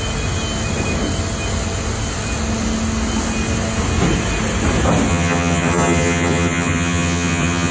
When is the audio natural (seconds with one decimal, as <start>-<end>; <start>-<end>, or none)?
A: 0.0-5.1